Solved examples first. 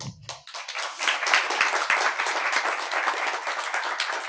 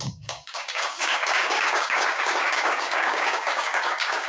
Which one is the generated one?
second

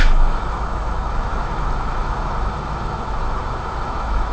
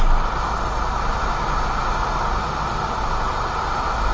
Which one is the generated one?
first